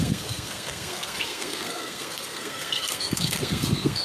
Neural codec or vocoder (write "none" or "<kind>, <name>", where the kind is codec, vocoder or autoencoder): codec, SNAC